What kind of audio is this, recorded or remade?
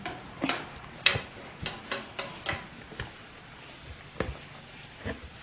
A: recorded